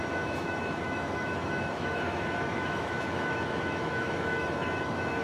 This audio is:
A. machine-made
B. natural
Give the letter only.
A